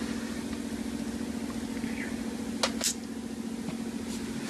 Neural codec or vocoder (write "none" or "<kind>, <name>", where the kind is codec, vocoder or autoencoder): none